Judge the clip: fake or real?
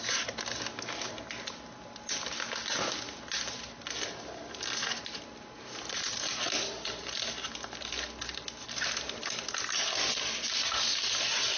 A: real